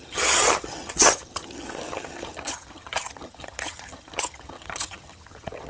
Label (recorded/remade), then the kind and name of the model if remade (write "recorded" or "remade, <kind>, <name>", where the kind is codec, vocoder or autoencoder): remade, vocoder, HiFi-GAN